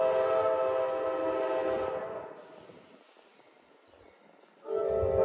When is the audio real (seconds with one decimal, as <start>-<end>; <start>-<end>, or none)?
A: 0.0-5.2